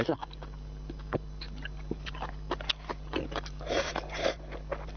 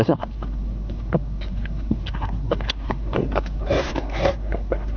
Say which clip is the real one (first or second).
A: first